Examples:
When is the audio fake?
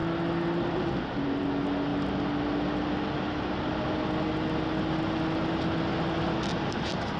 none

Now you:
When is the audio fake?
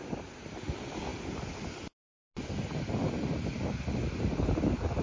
none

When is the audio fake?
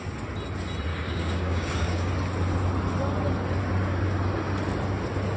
0.9-2.1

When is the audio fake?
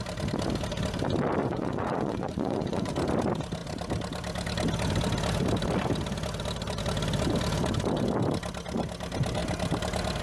1.4-2.9